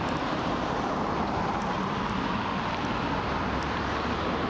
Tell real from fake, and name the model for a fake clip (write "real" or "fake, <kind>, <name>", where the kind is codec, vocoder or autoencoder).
real